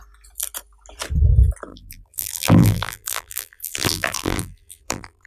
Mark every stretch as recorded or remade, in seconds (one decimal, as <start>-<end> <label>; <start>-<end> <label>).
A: 0.0-1.7 recorded; 1.7-5.3 remade